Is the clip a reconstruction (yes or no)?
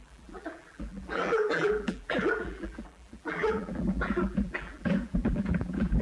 yes